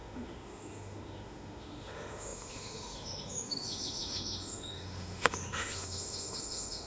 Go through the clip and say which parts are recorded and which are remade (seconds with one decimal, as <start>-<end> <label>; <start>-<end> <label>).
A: 0.0-6.9 remade